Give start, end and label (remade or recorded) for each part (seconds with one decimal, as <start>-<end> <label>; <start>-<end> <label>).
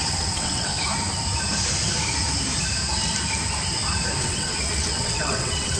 0.0-0.7 remade; 0.7-4.2 recorded; 4.2-5.8 remade